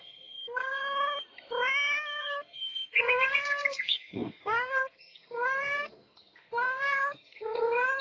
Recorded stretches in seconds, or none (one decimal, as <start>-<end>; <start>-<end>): 0.8-2.2